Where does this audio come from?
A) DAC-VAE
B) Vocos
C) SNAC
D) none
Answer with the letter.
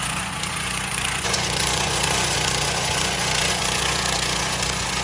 B